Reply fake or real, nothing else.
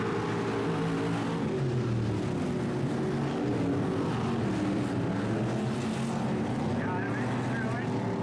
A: real